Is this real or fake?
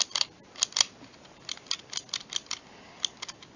real